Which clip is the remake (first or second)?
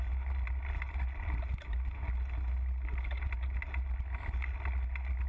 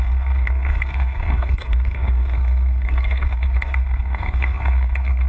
second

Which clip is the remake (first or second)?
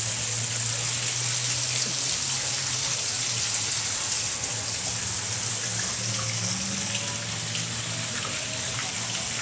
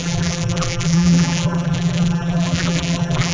second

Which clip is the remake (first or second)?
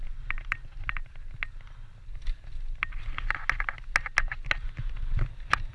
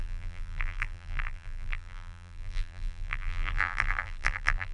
second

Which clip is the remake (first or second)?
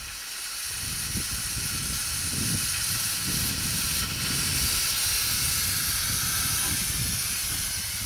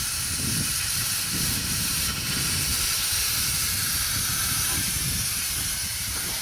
second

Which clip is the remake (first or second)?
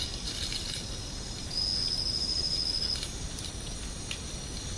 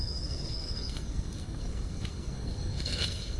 second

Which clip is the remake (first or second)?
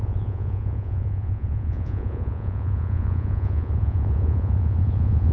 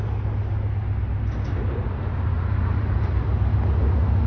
first